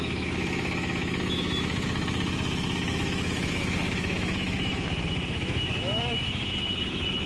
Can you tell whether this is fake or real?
fake